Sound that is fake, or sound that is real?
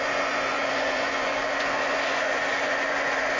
fake